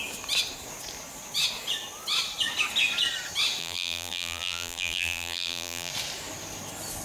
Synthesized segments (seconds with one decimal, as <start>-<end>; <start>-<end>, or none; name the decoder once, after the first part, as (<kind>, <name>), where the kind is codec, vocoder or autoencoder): 3.6-5.9 (vocoder, BigVGAN v2)